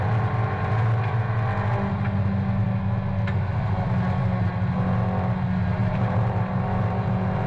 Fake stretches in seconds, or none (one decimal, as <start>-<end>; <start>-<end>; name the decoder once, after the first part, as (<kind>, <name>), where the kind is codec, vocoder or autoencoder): 5.8-7.1 (vocoder, BigVGAN v2)